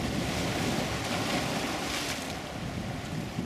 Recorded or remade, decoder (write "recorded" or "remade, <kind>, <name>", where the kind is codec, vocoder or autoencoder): recorded